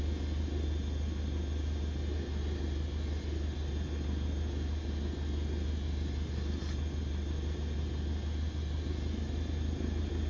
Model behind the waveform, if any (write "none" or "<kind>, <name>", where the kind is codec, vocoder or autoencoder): none